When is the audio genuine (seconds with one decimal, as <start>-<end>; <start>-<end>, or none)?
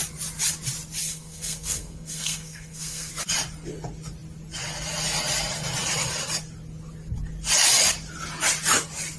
0.0-1.0; 3.1-9.2